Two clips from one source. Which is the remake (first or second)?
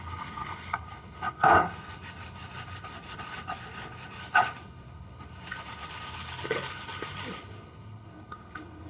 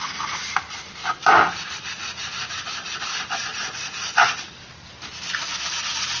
first